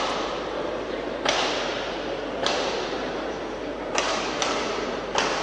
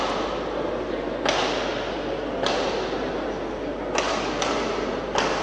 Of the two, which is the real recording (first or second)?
second